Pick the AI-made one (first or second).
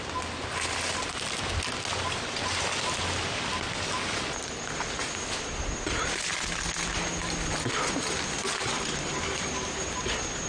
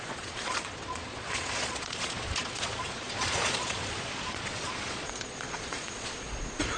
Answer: second